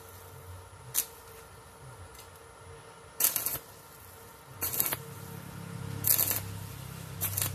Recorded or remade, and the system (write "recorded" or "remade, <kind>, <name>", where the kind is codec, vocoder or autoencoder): recorded